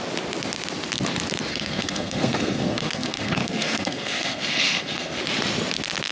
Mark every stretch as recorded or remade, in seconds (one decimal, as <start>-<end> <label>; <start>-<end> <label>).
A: 0.0-1.5 recorded; 1.5-5.2 remade; 5.2-6.1 recorded